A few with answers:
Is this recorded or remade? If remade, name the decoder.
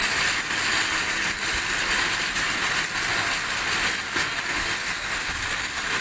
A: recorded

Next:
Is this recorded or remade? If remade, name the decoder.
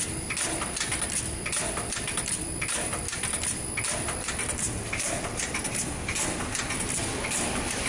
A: remade, vocoder, BigVGAN v2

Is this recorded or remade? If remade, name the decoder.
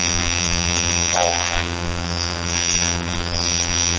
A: remade, vocoder, BigVGAN v2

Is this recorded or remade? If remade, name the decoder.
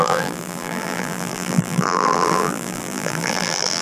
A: remade, vocoder, BigVGAN v2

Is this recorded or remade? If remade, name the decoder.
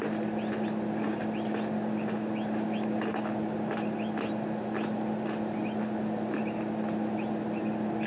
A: recorded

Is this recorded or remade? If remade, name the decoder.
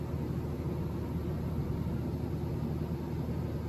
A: recorded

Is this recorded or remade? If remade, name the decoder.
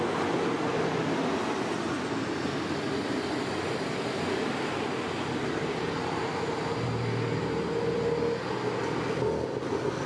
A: recorded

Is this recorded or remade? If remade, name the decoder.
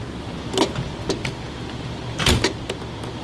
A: recorded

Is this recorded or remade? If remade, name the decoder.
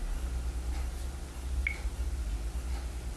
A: recorded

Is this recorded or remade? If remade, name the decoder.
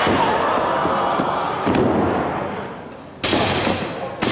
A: recorded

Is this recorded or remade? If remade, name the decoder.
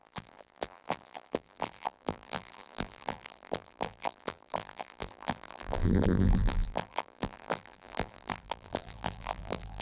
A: remade, vocoder, BigVGAN v2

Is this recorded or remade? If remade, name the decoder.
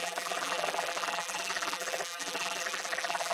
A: remade, vocoder, BigVGAN v2